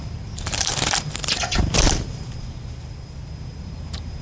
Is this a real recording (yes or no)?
no